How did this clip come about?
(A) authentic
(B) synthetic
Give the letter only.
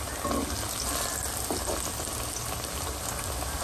A